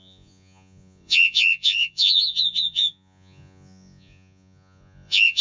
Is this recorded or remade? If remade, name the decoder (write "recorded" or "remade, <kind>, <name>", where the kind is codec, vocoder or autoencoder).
remade, vocoder, Vocos